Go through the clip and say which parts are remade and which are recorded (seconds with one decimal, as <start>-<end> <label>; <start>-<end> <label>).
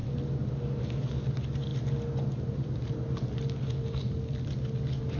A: 0.0-5.2 recorded